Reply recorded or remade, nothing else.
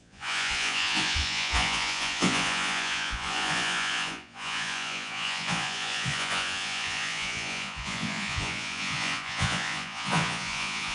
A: remade